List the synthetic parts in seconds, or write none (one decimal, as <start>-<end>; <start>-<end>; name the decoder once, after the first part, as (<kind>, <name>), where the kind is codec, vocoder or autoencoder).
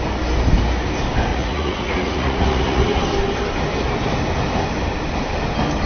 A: 1.3-3.0 (vocoder, Vocos)